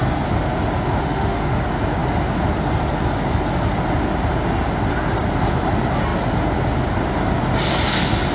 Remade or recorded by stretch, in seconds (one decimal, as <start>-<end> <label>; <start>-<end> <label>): 0.0-1.0 recorded; 1.0-1.6 remade; 1.6-8.3 recorded